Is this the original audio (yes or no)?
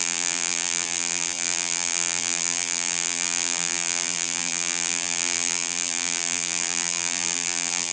no